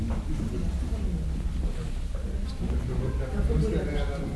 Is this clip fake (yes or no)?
no